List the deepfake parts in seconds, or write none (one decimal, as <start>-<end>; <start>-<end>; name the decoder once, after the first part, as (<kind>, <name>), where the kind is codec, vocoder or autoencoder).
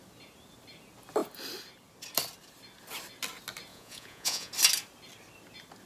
3.7-4.5 (vocoder, Vocos)